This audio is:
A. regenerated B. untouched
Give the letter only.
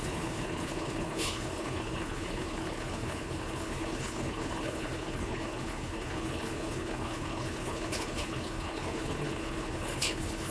A